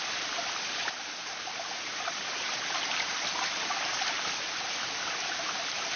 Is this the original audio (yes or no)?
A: yes